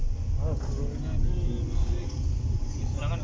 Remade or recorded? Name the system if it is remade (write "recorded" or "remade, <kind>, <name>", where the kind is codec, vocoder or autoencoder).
recorded